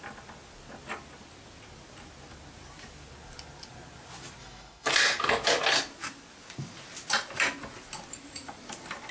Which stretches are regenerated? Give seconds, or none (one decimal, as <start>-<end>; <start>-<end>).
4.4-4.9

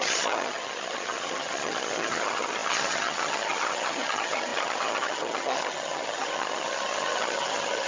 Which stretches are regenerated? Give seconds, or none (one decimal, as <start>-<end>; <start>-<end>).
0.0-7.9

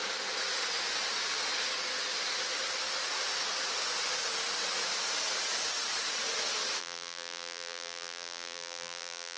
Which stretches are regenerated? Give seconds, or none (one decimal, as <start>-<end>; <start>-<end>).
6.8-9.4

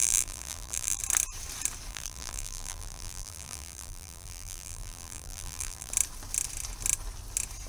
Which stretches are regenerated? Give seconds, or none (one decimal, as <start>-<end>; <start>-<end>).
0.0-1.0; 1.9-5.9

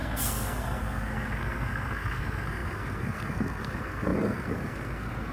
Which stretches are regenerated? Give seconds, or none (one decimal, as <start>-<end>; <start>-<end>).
0.0-5.3

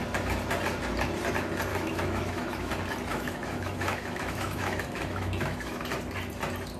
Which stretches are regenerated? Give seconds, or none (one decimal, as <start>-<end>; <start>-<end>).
1.7-2.7; 3.1-5.8

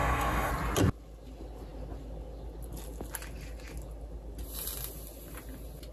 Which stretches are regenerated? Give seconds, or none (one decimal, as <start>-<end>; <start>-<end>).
0.0-0.5